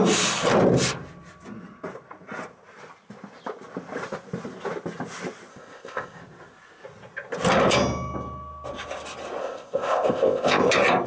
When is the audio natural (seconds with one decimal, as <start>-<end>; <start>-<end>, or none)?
0.0-5.5; 6.2-9.4; 10.6-11.1